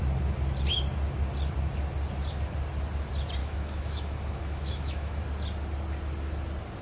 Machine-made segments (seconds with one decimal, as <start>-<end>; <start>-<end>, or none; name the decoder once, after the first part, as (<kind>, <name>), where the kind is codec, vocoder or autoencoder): 3.4-5.2 (autoencoder, DAC-VAE)